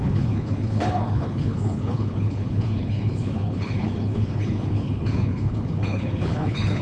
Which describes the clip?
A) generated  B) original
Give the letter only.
A